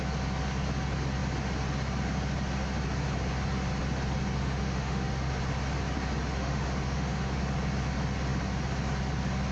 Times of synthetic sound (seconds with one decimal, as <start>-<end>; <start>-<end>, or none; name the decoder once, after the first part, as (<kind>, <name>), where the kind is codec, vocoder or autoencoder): 4.4-5.3 (autoencoder, DAC-VAE); 6.4-7.4